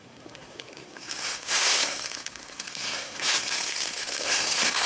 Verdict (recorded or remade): remade